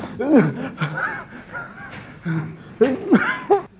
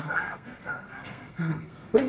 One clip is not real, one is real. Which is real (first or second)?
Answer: first